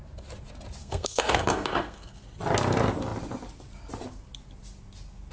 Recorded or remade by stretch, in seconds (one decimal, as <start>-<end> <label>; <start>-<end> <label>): 0.0-0.8 recorded; 0.8-2.2 remade; 2.2-5.3 recorded